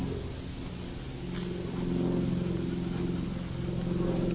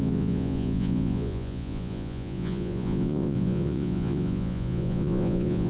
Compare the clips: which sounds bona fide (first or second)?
first